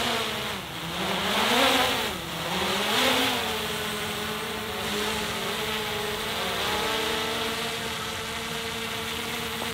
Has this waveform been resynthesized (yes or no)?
no